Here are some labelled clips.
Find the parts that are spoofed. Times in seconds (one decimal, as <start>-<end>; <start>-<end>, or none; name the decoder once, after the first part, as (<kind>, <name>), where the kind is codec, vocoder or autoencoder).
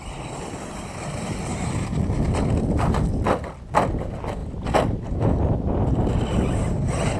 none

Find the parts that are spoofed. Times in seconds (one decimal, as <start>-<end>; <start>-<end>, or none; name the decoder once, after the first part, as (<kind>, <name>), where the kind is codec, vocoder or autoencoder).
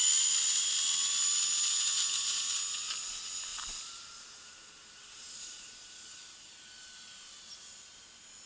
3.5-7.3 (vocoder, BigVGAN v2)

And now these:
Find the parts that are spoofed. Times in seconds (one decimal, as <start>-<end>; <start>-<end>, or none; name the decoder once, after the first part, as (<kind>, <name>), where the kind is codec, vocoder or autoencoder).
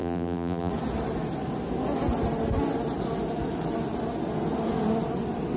0.0-0.7 (vocoder, BigVGAN v2)